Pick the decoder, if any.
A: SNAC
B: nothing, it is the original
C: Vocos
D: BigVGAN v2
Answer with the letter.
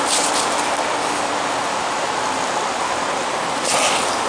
B